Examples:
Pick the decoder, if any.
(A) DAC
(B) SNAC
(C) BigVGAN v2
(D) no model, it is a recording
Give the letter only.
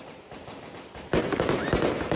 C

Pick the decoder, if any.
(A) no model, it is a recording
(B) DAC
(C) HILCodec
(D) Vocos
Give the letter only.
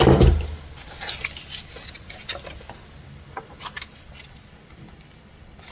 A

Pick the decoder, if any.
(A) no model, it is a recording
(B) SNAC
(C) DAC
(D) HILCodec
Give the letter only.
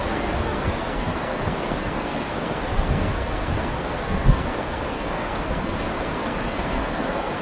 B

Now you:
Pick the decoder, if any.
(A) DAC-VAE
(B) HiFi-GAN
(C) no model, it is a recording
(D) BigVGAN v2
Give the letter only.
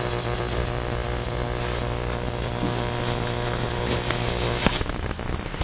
C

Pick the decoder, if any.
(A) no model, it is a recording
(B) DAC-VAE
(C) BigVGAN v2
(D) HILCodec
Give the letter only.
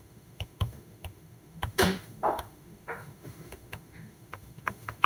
B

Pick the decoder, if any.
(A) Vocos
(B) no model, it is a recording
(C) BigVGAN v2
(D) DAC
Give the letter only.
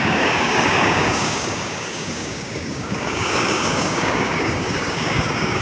D